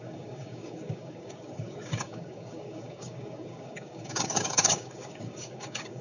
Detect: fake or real fake